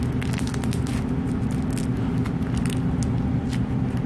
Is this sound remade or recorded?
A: recorded